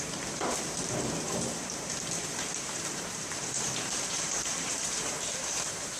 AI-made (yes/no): yes